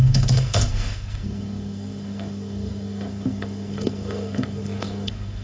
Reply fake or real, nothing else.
fake